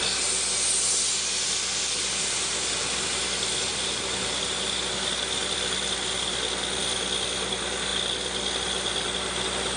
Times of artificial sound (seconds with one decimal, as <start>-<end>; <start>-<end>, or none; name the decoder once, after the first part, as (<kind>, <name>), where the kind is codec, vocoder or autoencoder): 3.7-4.2 (vocoder, BigVGAN v2)